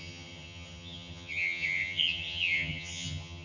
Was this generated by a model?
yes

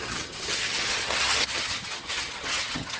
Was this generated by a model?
yes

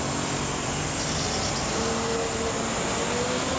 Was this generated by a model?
no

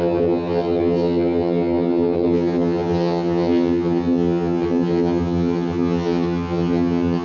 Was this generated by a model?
yes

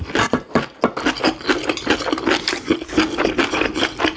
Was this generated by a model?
no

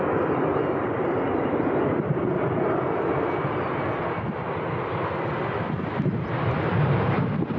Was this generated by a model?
no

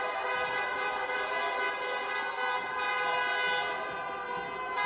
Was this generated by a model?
no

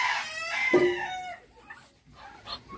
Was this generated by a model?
no